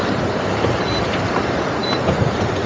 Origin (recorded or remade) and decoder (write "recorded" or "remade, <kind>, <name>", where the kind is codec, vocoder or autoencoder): remade, vocoder, BigVGAN v2